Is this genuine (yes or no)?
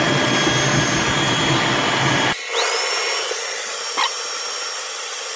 yes